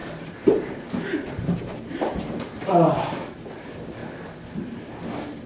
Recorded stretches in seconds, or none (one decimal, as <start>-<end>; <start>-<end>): 3.3-4.0; 4.9-5.5